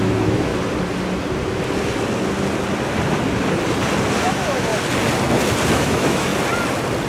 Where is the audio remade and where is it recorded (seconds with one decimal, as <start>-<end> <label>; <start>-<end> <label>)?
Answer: 0.0-0.5 remade; 0.5-4.2 recorded; 4.2-4.7 remade; 4.7-5.7 recorded; 5.7-6.3 remade; 6.3-7.1 recorded